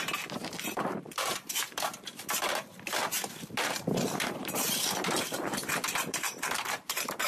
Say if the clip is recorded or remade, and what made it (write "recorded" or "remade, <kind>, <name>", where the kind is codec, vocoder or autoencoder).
remade, vocoder, BigVGAN v2